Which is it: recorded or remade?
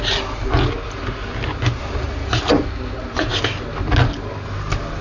recorded